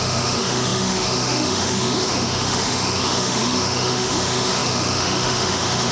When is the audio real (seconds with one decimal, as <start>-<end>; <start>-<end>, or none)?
none